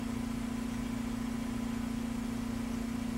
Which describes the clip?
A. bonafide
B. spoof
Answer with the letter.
A